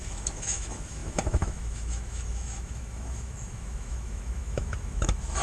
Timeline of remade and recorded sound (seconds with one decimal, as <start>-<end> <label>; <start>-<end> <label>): 0.0-5.4 remade

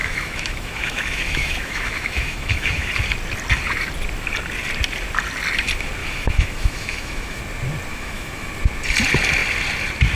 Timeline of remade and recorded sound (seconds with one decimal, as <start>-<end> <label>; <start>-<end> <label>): 0.0-2.9 remade; 2.9-6.0 recorded; 6.0-7.4 remade; 7.4-7.9 recorded; 7.9-8.5 remade; 8.5-10.2 recorded

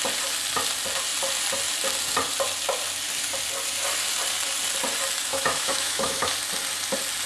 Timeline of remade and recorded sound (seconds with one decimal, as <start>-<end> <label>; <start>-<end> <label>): 0.0-5.3 recorded; 5.3-6.3 remade; 6.3-7.3 recorded